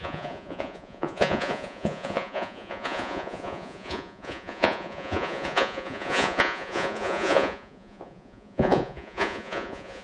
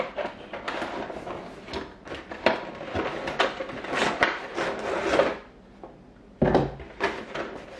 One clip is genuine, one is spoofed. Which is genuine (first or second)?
second